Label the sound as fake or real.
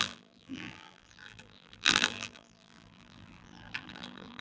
fake